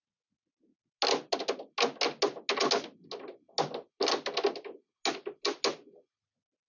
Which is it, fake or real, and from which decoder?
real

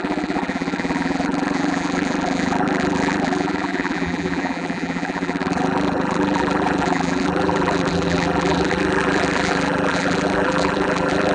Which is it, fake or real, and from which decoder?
fake, vocoder, BigVGAN v2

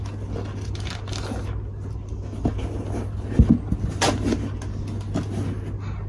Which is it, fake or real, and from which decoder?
real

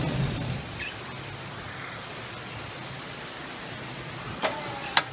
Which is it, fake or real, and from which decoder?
real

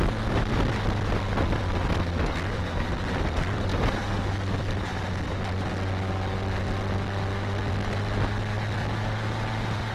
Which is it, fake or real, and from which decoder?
real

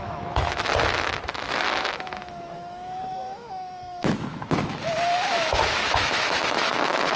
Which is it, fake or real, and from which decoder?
fake, autoencoder, DAC-VAE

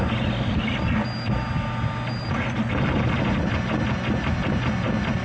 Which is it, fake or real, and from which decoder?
real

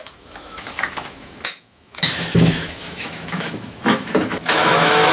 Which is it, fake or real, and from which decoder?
fake, autoencoder, DAC-VAE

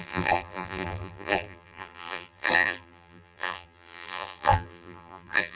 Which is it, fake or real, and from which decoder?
fake, vocoder, BigVGAN v2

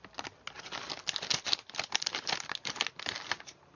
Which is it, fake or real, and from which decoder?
real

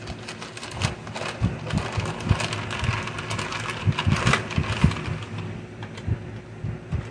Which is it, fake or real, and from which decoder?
real